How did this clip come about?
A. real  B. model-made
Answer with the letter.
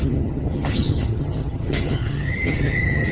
B